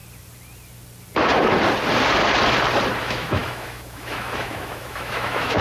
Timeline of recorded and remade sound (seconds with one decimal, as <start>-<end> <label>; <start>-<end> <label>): 0.0-3.0 recorded; 3.0-5.6 remade

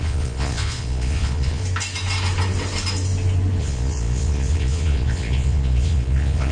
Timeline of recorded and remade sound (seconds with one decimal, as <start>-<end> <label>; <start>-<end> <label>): 0.0-1.6 remade; 1.6-3.6 recorded; 3.6-6.5 remade

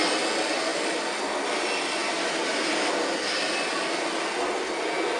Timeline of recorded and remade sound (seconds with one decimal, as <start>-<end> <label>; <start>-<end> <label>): 0.0-0.7 recorded; 0.7-1.4 remade; 1.4-5.2 recorded

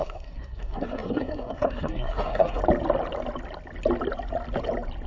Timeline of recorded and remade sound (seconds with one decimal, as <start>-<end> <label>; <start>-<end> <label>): 0.0-2.6 remade; 2.6-5.1 recorded

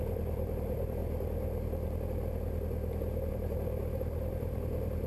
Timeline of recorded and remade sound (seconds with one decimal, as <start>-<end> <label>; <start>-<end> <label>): 0.0-1.0 remade; 1.0-3.3 recorded; 3.3-3.8 remade; 3.8-4.3 recorded; 4.3-5.1 remade

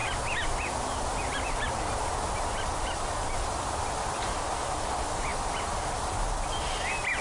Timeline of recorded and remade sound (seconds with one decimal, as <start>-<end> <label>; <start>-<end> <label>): 0.0-7.2 recorded